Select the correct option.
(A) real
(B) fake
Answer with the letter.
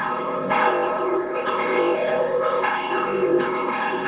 B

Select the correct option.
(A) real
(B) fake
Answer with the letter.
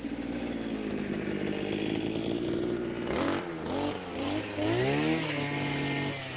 A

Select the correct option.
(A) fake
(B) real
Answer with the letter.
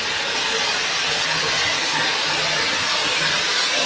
B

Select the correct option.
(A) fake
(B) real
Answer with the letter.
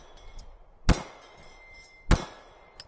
B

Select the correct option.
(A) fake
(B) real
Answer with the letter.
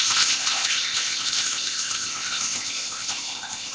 A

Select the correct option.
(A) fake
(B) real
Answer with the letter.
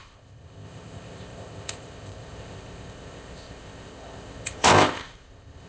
A